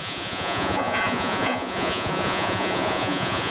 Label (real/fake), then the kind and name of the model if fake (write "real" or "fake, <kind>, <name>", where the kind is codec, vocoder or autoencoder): fake, vocoder, Vocos